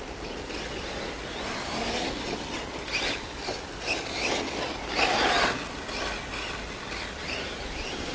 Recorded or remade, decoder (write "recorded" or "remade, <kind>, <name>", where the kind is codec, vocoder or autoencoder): recorded